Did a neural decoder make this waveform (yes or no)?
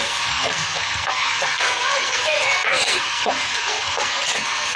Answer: yes